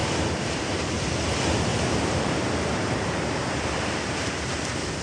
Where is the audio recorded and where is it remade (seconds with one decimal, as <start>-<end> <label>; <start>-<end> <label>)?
0.0-0.9 remade; 0.9-1.7 recorded; 1.7-4.3 remade; 4.3-5.0 recorded